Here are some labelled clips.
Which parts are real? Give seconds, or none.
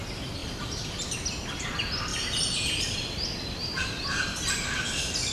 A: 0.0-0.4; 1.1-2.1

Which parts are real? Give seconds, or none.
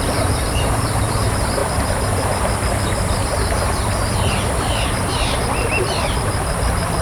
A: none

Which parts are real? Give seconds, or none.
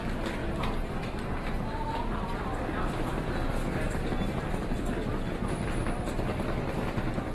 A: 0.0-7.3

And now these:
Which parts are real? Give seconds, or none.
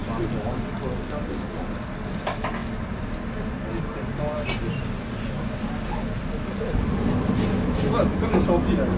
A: 0.0-9.0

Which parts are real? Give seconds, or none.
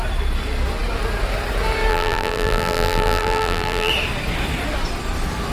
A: 0.0-1.9; 3.9-5.5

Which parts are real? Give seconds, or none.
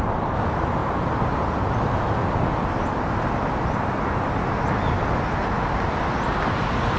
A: 0.0-0.8; 1.8-7.0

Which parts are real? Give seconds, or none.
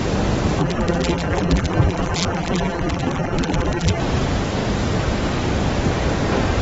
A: 0.0-0.6; 4.0-6.6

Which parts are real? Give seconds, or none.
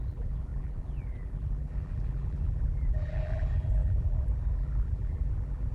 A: none